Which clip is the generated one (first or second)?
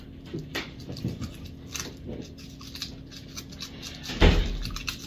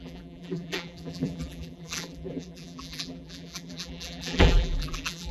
second